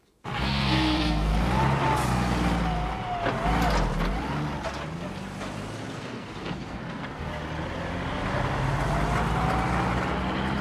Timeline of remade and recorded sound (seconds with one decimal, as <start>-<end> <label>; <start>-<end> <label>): 0.0-1.3 remade; 1.3-5.9 recorded; 5.9-7.3 remade; 7.3-10.6 recorded